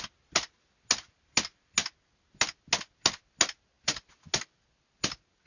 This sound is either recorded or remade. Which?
recorded